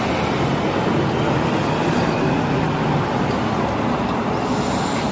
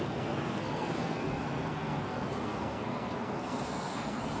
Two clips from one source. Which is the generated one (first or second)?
second